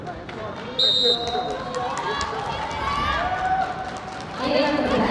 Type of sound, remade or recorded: recorded